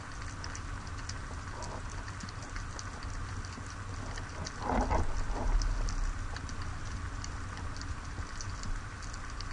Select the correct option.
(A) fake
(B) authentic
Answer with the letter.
B